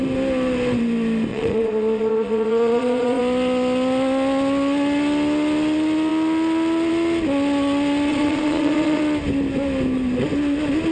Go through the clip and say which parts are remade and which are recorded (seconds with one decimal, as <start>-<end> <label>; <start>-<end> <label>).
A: 0.0-1.3 recorded; 1.3-3.2 remade; 3.2-8.1 recorded; 8.1-9.0 remade; 9.0-10.9 recorded